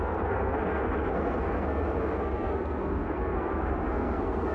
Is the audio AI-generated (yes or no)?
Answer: yes